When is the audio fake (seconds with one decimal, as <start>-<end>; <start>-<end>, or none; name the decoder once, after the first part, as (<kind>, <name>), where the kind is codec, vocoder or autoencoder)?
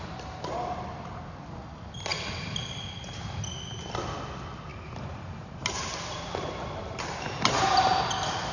4.7-8.1 (vocoder, BigVGAN v2)